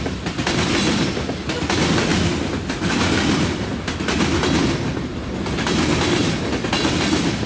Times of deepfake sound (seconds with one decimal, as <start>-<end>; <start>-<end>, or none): 5.1-6.4